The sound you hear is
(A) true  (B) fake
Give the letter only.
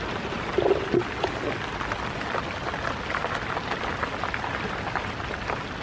A